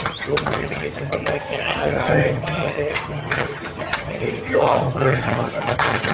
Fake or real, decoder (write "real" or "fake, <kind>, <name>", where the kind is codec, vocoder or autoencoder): fake, vocoder, HiFi-GAN